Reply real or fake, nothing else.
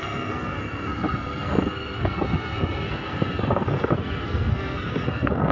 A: fake